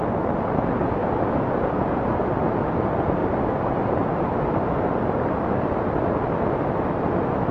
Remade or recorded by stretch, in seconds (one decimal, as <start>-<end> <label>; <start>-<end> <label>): 0.0-1.0 recorded; 1.0-2.0 remade; 2.0-3.2 recorded; 3.2-5.7 remade; 5.7-7.5 recorded